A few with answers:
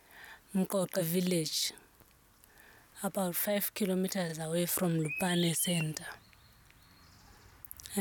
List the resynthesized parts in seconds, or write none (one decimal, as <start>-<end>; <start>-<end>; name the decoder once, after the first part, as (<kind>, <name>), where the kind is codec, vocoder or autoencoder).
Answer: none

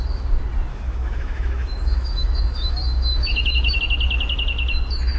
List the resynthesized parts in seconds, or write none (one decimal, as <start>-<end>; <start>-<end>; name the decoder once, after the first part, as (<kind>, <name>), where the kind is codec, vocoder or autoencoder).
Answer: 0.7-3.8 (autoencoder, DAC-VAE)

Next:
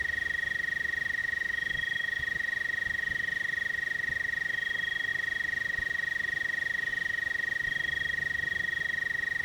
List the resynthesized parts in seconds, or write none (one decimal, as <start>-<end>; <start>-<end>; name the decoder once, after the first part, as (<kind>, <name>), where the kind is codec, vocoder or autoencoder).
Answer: 1.2-2.2 (autoencoder, DAC-VAE)

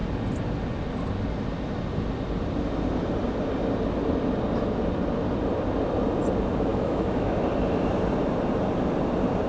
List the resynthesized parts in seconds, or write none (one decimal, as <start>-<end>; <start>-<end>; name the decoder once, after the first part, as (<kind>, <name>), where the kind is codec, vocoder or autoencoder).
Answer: 6.7-7.4 (autoencoder, DAC-VAE)

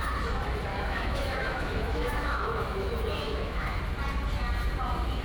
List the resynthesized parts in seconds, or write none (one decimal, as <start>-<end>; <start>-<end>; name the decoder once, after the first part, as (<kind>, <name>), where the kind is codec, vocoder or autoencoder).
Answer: 0.7-3.8 (autoencoder, DAC-VAE)

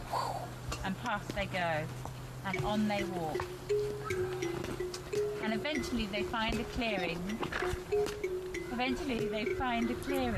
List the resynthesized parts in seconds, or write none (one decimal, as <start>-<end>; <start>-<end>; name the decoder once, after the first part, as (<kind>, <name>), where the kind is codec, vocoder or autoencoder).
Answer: none